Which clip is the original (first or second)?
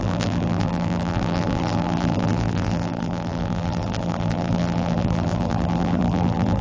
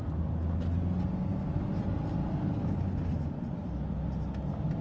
second